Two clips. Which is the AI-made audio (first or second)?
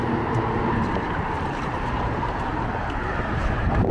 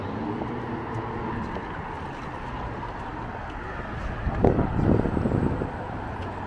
first